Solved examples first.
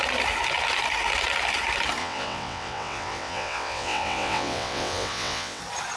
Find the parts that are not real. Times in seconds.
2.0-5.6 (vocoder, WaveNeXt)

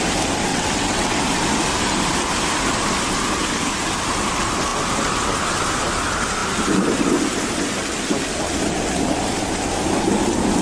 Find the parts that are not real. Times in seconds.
0.5-1.2 (vocoder, WaveNeXt)

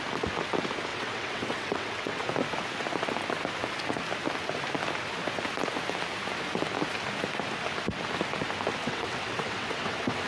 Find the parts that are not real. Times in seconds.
0.9-2.3 (vocoder, WaveNeXt); 8.8-10.3